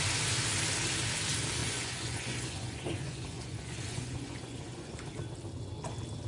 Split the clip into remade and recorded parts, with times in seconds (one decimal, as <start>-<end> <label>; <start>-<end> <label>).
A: 0.0-1.6 recorded; 1.6-5.1 remade; 5.1-6.3 recorded